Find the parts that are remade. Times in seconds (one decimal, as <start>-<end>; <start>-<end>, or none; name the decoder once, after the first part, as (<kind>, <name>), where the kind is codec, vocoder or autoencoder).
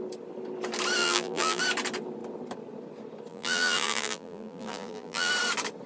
1.0-1.6 (vocoder, BigVGAN v2); 3.3-5.3